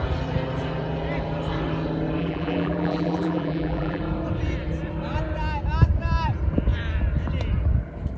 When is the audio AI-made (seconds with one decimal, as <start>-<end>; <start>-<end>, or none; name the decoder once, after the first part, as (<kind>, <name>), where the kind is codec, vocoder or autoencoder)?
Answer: 2.2-4.0 (vocoder, BigVGAN v2)